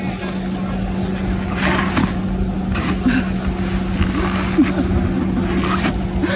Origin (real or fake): real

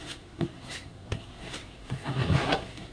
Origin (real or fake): fake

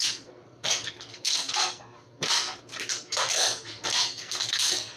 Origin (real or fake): fake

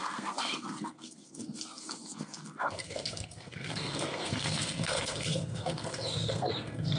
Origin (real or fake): fake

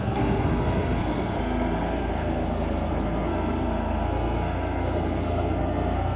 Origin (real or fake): fake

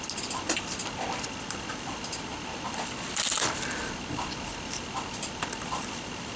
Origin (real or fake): real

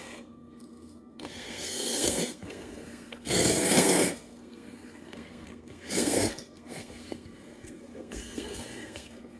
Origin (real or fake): fake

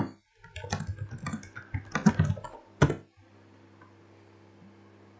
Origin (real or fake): real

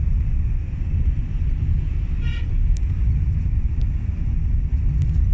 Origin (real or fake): real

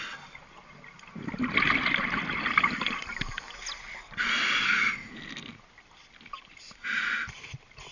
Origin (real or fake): real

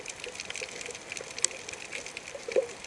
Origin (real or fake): real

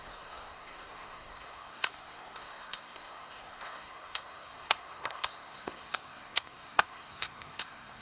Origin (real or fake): fake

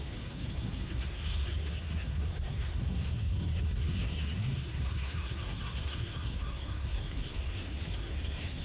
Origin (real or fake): fake